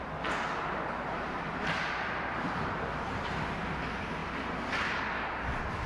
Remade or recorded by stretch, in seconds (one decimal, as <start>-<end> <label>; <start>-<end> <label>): 0.0-5.9 recorded